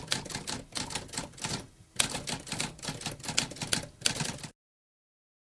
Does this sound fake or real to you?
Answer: real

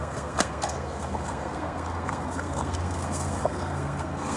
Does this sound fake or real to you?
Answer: fake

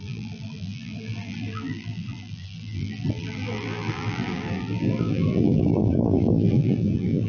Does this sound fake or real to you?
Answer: fake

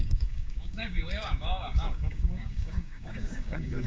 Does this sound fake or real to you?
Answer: fake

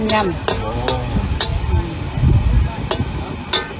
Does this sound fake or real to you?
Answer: real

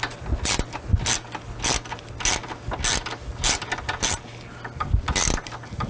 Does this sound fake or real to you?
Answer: real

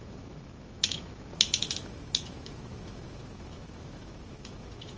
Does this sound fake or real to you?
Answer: fake